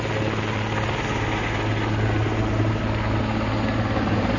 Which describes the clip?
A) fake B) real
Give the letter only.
B